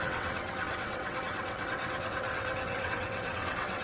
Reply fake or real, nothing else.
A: fake